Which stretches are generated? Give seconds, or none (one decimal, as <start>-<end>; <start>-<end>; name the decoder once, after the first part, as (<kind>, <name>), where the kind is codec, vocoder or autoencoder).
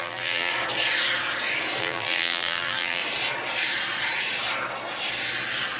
0.0-0.5 (vocoder, BigVGAN v2); 1.8-3.0